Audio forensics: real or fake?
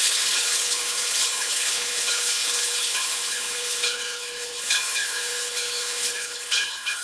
fake